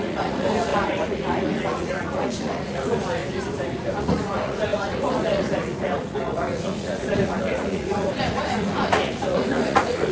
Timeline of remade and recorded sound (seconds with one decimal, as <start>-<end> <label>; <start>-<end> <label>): 0.0-3.2 remade; 3.2-4.0 recorded; 4.0-10.1 remade

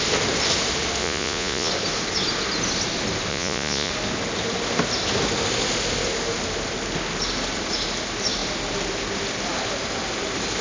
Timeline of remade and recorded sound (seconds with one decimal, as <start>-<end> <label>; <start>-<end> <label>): 0.0-1.0 recorded; 1.0-1.7 remade; 1.7-3.3 recorded; 3.3-3.9 remade; 3.9-10.6 recorded